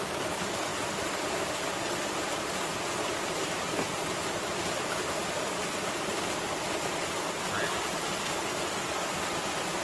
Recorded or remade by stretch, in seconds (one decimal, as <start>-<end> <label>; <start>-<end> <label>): 0.0-9.8 recorded